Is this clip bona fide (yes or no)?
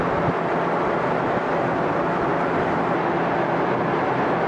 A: yes